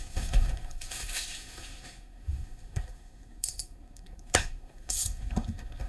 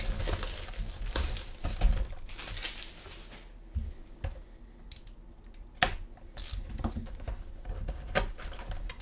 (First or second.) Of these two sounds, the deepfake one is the first